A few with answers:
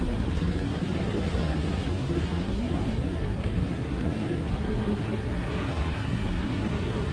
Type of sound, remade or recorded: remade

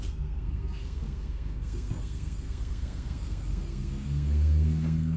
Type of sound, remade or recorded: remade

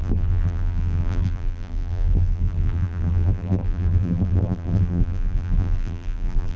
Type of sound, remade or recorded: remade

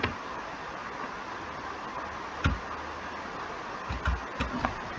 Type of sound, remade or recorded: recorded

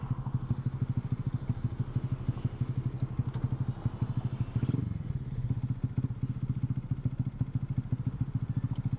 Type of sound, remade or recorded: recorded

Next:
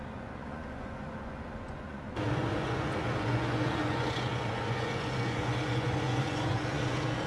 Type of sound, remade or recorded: remade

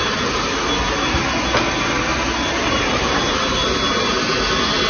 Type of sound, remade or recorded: recorded